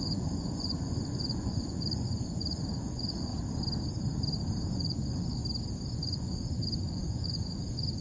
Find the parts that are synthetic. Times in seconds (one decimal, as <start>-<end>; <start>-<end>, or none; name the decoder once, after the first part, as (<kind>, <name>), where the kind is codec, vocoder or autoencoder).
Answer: 0.0-3.3 (vocoder, Vocos); 4.7-5.4; 5.9-8.0